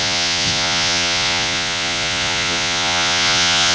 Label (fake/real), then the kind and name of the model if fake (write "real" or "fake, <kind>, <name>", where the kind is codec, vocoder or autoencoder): fake, vocoder, Vocos